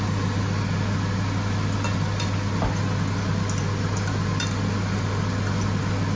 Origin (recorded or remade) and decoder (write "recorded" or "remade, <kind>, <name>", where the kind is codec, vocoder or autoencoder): recorded